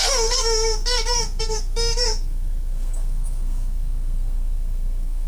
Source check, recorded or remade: remade